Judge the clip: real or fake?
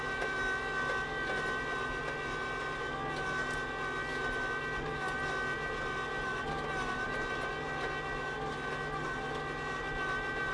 real